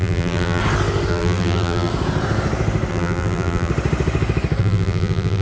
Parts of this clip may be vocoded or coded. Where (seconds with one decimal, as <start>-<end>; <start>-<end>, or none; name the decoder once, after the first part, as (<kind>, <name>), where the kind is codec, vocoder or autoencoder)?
0.0-0.6 (vocoder, BigVGAN v2); 1.1-1.9; 2.9-3.7; 4.6-5.4

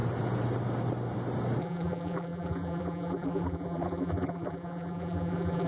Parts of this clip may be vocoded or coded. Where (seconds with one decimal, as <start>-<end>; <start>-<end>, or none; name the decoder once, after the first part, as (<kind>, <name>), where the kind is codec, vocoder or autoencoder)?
1.6-5.7 (vocoder, BigVGAN v2)

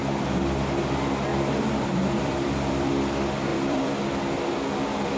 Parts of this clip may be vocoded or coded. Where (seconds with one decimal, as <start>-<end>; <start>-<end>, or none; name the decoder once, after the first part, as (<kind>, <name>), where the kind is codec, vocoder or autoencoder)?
1.3-2.9 (vocoder, BigVGAN v2); 3.5-4.0

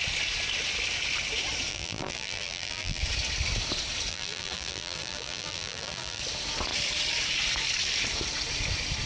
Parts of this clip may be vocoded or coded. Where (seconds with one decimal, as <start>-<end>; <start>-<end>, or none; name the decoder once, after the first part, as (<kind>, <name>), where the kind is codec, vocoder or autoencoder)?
1.7-3.0 (vocoder, BigVGAN v2); 4.1-6.2

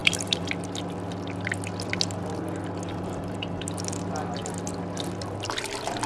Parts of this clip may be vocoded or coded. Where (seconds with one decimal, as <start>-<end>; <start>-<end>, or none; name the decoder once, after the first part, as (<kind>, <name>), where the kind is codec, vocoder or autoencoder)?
0.0-0.5 (vocoder, BigVGAN v2); 2.9-3.7

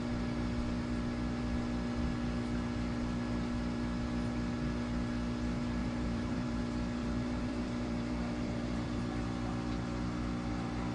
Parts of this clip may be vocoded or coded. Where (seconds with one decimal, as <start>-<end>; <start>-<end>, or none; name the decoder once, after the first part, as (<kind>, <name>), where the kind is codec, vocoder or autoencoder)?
5.8-6.6 (vocoder, BigVGAN v2); 7.0-9.0

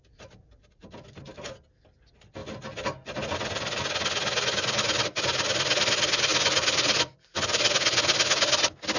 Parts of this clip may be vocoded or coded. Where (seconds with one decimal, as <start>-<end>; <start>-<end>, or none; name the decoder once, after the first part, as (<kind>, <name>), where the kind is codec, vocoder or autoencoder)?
2.4-3.8 (vocoder, BigVGAN v2); 6.3-7.7

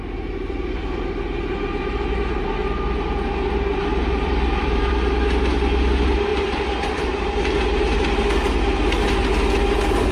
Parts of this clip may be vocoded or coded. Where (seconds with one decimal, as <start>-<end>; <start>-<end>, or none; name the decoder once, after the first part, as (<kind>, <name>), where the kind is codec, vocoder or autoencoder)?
3.7-4.9 (vocoder, BigVGAN v2); 6.3-8.0